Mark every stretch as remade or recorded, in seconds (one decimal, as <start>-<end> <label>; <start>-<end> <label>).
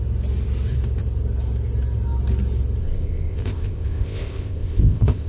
0.0-2.8 recorded; 2.8-5.3 remade